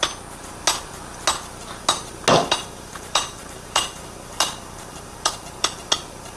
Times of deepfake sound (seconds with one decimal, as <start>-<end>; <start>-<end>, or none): 2.4-6.4